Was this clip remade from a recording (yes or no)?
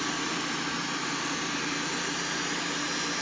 no